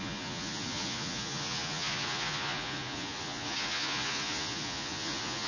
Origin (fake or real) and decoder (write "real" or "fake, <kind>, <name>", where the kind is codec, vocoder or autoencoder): fake, vocoder, Vocos